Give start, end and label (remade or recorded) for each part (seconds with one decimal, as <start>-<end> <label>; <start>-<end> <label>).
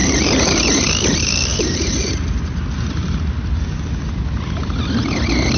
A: 0.0-0.9 remade; 0.9-1.5 recorded; 1.5-2.2 remade; 2.2-5.6 recorded